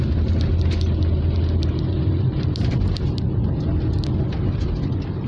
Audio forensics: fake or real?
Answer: real